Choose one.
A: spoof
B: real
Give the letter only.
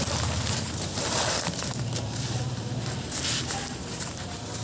A